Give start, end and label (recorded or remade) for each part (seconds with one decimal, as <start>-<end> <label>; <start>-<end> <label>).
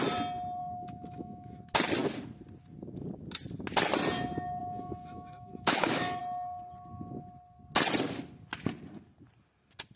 0.0-0.6 recorded; 0.6-1.6 remade; 1.6-4.6 recorded; 4.6-6.2 remade; 6.2-10.0 recorded